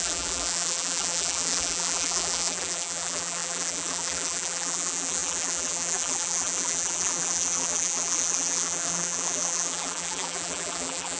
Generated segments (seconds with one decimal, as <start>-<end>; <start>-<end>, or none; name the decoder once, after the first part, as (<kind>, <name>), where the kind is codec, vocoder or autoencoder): 0.0-11.2 (vocoder, BigVGAN v2)